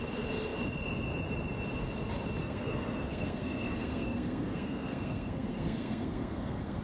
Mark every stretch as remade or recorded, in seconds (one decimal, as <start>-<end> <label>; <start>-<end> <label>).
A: 0.0-2.4 recorded; 2.4-6.8 remade